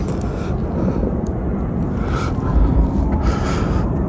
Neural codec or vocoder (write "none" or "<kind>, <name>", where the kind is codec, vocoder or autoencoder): none